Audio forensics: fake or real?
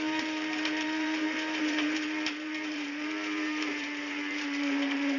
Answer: fake